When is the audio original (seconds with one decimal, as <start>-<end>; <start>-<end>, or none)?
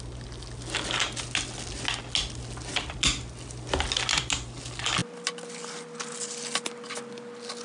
0.0-7.6